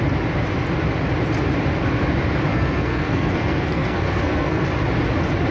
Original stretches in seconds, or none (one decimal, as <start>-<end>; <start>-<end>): 0.0-2.5; 4.6-5.5